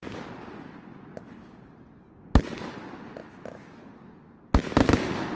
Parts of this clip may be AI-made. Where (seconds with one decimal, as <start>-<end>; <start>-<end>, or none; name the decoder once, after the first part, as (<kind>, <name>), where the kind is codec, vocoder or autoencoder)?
3.2-3.8 (autoencoder, DAC-VAE)